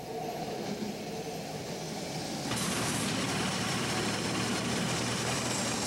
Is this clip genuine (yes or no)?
yes